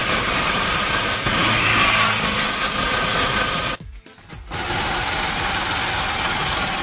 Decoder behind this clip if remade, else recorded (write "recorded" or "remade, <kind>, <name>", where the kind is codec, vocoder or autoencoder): recorded